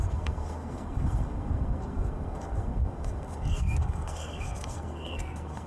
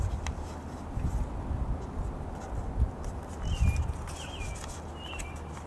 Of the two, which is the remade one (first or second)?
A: first